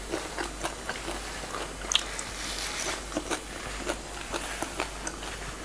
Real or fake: real